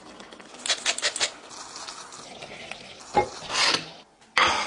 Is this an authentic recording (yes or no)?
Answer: yes